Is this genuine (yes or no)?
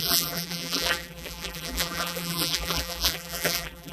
no